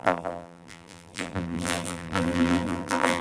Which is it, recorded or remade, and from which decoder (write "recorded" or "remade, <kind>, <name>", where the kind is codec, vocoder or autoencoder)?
remade, vocoder, BigVGAN v2